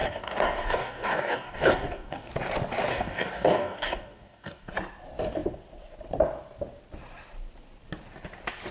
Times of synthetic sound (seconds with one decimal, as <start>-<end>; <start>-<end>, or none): 0.0-2.3; 2.9-4.7